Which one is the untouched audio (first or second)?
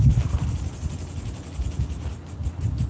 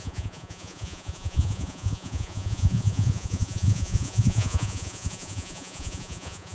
first